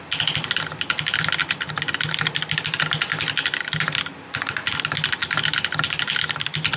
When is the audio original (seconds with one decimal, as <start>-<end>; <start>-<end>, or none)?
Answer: 0.0-6.8